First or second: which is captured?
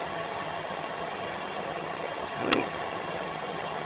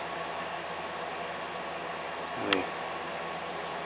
second